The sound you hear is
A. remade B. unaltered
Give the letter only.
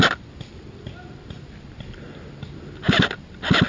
B